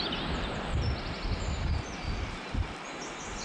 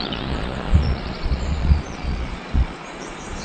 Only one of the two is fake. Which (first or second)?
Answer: second